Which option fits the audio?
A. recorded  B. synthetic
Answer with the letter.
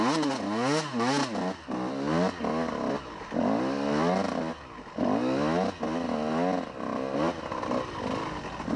A